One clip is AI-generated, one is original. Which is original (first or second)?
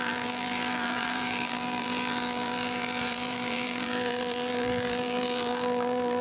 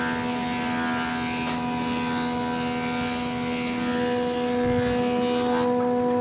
second